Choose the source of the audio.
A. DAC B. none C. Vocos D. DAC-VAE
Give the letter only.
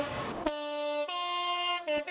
A